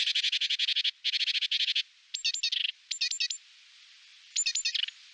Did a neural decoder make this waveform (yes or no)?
no